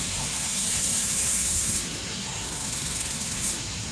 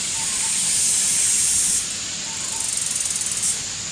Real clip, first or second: second